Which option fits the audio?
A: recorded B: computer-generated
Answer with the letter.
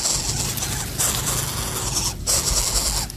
A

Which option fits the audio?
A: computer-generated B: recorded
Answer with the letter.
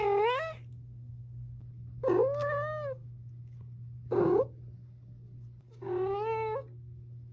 A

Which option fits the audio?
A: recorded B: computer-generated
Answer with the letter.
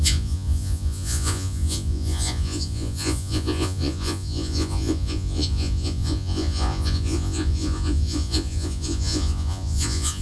B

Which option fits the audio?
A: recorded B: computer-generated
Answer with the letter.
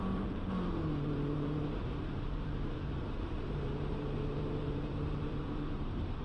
B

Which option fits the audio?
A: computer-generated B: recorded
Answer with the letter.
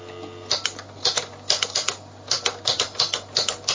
B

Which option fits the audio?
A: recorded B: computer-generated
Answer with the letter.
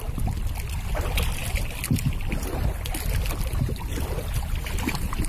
A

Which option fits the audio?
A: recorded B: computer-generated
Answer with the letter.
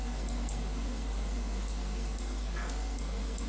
B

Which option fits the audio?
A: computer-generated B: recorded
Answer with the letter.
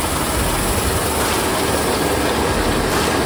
B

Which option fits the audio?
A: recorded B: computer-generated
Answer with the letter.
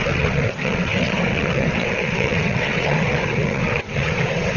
B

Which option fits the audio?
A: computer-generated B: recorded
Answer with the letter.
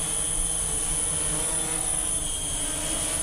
B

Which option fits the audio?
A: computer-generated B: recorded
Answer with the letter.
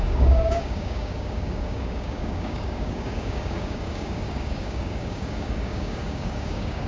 A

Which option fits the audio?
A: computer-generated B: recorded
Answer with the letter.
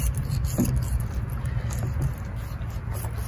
B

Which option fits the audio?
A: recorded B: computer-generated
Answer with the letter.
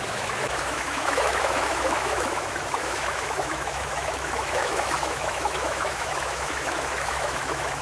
B